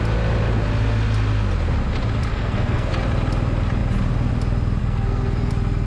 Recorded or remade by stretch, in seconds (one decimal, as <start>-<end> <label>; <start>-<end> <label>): 0.0-2.3 recorded; 2.3-2.9 remade; 2.9-4.8 recorded; 4.8-5.5 remade; 5.5-5.9 recorded